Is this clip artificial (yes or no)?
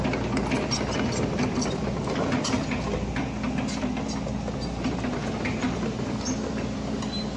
no